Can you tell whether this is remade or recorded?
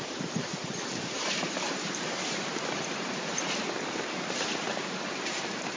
remade